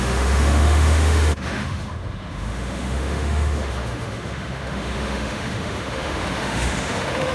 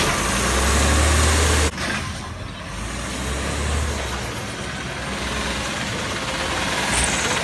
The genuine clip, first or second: second